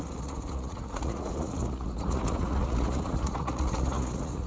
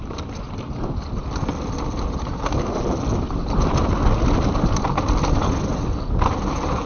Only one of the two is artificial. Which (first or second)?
first